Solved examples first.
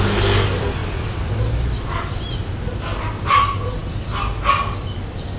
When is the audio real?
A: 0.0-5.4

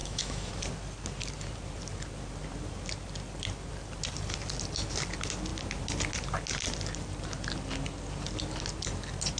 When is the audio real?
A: 0.5-9.4

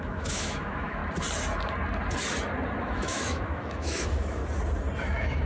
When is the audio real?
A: 1.0-2.8; 4.4-5.0

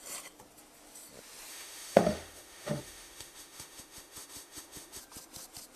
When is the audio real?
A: 0.0-1.5; 5.0-5.8